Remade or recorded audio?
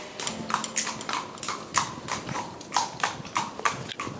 recorded